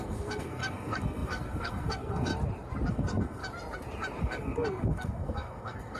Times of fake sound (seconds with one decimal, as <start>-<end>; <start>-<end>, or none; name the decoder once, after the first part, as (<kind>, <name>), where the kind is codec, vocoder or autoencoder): 0.0-2.3 (codec, SNAC); 2.9-3.4; 4.2-6.0